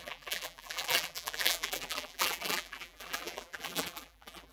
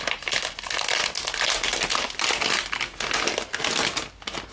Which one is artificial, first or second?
first